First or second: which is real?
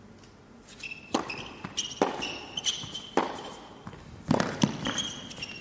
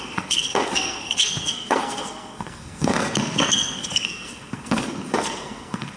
first